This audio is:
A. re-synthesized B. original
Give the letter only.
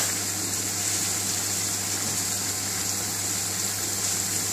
B